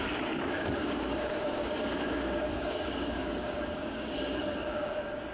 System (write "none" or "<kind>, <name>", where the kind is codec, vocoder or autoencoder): codec, DAC